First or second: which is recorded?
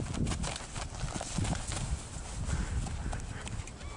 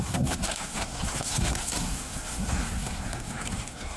first